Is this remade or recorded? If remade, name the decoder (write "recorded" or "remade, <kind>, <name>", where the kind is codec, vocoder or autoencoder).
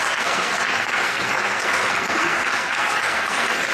remade, codec, SNAC